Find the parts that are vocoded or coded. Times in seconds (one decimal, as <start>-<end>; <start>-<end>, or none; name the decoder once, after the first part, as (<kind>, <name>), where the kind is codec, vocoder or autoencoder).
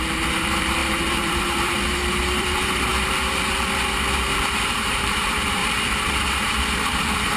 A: 0.0-2.9 (vocoder, BigVGAN v2); 4.6-7.4